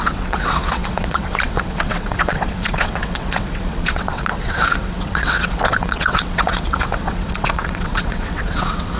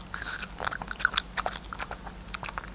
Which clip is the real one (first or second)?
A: second